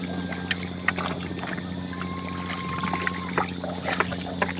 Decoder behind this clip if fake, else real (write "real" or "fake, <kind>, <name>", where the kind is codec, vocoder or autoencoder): real